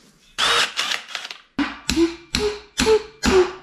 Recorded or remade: recorded